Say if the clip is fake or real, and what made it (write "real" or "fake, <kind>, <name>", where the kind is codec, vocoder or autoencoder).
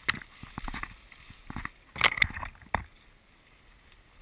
real